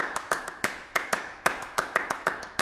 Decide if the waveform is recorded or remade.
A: remade